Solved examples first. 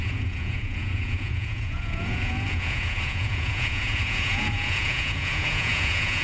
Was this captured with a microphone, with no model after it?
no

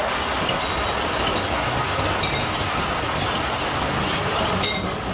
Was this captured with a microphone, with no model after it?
yes